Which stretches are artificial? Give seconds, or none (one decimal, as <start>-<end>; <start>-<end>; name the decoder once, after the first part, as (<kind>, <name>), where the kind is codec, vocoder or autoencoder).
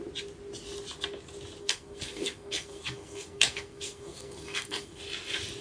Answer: 1.6-5.0 (codec, SNAC)